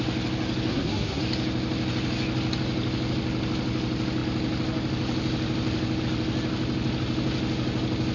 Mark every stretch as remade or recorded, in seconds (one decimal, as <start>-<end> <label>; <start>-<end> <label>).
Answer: 0.0-0.7 recorded; 0.7-1.2 remade; 1.2-8.1 recorded